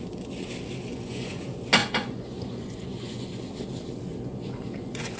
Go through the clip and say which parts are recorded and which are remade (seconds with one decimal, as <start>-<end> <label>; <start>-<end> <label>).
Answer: 0.0-0.9 recorded; 0.9-1.4 remade; 1.4-1.8 recorded; 1.8-3.5 remade; 3.5-4.1 recorded; 4.1-5.2 remade